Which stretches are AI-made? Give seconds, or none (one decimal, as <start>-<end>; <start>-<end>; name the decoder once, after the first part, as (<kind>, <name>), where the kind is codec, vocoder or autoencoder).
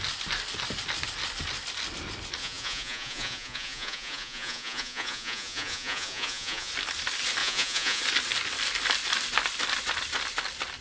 2.4-6.7 (vocoder, Vocos); 7.4-8.0